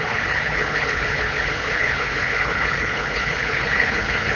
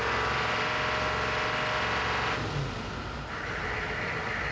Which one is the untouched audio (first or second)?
second